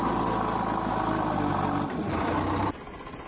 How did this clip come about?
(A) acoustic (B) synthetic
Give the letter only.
A